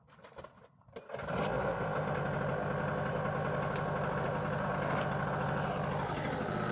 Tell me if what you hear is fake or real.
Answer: real